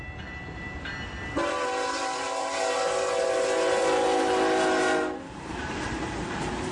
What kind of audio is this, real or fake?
real